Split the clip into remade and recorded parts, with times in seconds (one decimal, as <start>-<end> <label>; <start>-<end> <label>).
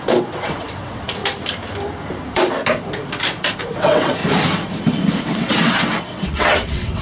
0.0-1.2 remade; 1.2-3.7 recorded; 3.7-4.2 remade; 4.2-5.2 recorded; 5.2-7.0 remade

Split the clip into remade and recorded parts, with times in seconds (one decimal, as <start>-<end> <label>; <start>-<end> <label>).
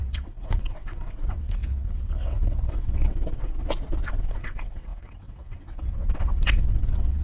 0.0-3.6 remade; 3.6-4.2 recorded; 4.2-7.2 remade